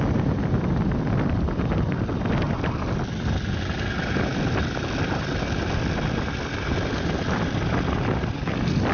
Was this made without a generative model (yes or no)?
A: yes